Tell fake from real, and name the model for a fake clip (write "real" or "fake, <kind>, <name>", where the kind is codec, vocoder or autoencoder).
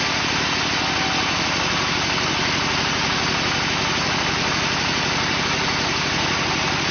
real